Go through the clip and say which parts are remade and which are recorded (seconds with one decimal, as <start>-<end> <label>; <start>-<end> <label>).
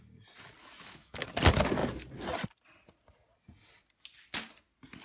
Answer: 0.0-0.6 recorded; 0.6-1.3 remade; 1.3-5.0 recorded